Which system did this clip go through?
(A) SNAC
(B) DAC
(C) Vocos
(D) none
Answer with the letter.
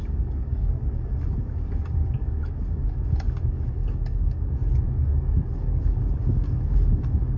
B